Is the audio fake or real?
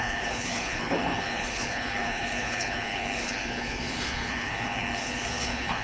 fake